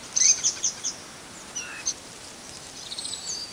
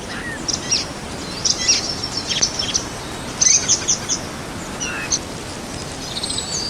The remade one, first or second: first